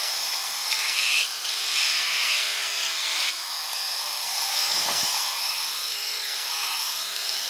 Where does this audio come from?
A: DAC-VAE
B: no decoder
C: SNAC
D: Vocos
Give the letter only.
C